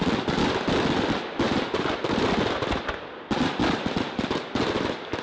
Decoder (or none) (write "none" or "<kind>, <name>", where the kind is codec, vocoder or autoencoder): none